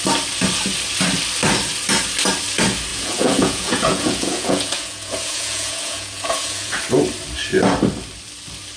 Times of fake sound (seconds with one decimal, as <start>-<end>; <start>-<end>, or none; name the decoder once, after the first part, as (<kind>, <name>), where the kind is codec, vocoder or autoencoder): 2.9-6.8 (vocoder, Vocos)

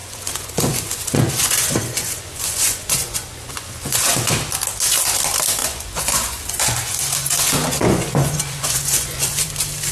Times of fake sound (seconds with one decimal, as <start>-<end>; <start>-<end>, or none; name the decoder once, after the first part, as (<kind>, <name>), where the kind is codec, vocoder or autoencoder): 0.0-4.3 (vocoder, Vocos); 5.6-9.5

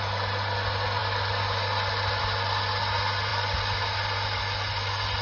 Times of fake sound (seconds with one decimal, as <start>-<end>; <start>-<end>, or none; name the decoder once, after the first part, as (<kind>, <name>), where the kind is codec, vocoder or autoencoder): none

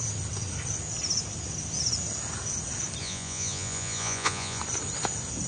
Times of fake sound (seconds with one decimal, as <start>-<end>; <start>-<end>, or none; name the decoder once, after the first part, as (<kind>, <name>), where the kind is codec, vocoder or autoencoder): 3.0-4.6 (vocoder, Vocos)

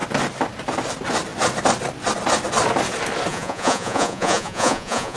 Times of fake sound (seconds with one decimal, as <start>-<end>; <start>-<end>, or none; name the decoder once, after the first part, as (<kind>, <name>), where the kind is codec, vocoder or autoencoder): 3.3-5.2 (vocoder, Vocos)

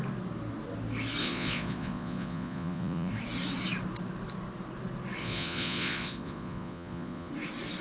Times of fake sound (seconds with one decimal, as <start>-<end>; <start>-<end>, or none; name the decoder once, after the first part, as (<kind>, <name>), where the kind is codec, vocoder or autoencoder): 1.2-3.1 (vocoder, Vocos); 5.2-7.3

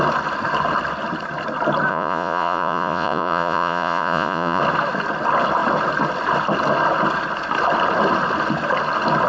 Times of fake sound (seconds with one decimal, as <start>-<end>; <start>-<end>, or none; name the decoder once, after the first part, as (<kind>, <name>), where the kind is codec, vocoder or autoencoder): 1.9-4.6 (vocoder, Vocos)